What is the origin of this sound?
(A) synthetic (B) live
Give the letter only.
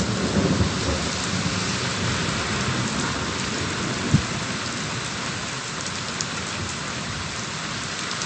B